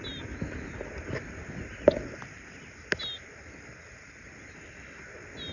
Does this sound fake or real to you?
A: real